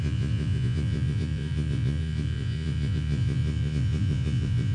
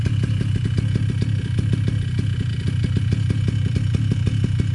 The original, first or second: second